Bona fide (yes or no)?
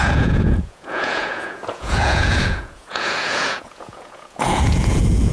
no